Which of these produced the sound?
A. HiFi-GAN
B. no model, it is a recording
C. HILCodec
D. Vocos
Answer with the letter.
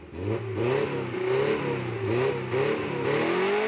B